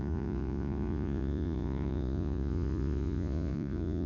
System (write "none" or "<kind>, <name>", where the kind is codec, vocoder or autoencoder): vocoder, Vocos